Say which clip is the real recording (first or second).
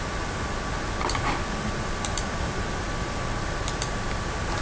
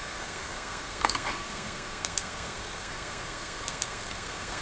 first